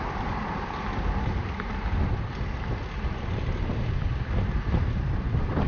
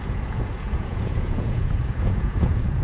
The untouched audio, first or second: first